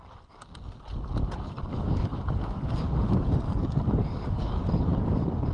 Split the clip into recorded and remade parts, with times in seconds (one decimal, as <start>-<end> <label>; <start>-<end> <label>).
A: 0.0-1.7 recorded; 1.7-5.0 remade; 5.0-5.5 recorded